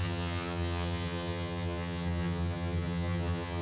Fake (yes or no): yes